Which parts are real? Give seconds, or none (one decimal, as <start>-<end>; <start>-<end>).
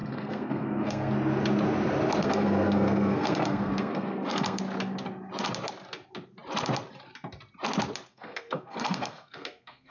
1.1-2.2; 4.6-8.1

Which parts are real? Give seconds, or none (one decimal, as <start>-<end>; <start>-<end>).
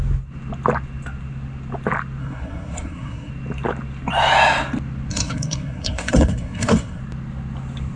0.0-2.2; 3.3-5.1; 7.0-8.0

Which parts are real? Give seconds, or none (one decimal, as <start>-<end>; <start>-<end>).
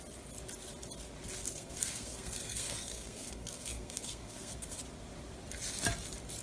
0.0-1.4; 4.8-6.4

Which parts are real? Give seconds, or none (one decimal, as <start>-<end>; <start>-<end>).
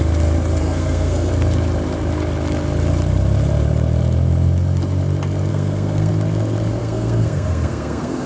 0.0-0.6; 1.3-5.5; 6.1-6.8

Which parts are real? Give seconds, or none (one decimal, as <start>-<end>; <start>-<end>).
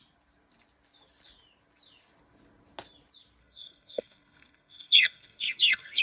0.0-3.4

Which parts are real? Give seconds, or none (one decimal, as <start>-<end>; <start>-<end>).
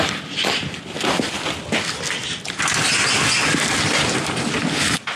0.0-5.2